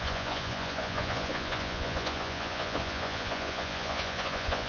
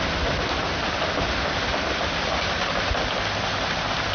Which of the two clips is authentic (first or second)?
second